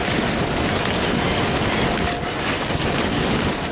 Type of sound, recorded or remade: recorded